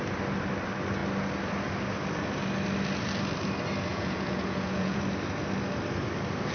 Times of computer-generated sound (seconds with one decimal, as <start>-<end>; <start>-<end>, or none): 3.9-5.0